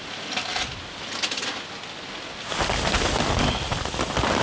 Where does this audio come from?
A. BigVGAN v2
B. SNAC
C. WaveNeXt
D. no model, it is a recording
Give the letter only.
D